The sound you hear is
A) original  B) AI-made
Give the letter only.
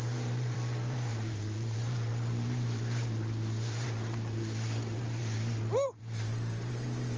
B